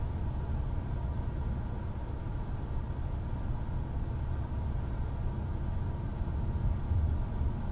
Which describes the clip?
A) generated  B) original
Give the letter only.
B